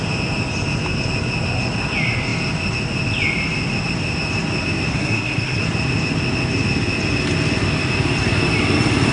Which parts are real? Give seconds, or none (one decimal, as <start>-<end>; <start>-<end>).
0.0-4.9; 5.6-9.1